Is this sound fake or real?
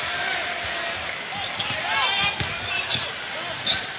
real